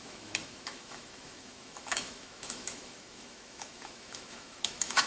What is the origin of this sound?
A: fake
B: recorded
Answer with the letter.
A